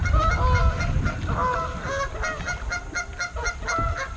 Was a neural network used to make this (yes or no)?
no